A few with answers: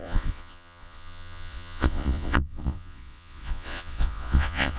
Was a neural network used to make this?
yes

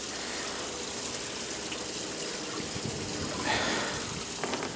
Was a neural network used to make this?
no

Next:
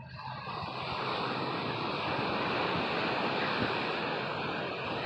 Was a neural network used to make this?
no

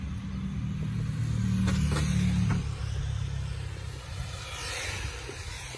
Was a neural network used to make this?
no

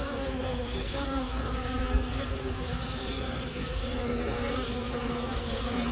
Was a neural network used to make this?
yes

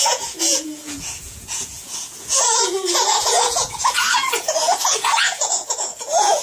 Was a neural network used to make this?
yes